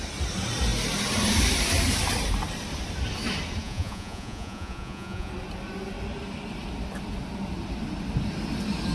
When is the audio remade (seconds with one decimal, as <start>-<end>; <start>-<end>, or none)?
3.6-5.3